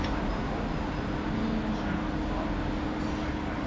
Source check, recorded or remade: recorded